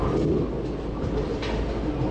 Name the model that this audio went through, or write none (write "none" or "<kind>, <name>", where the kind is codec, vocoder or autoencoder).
none